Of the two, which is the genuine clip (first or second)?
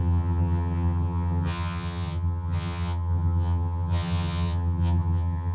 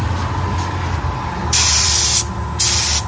second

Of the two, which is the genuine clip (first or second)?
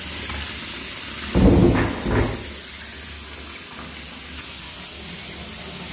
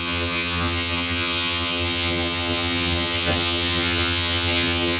first